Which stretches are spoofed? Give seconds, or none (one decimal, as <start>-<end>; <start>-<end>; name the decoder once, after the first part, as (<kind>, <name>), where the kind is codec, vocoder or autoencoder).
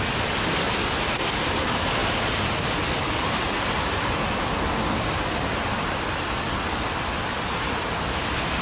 none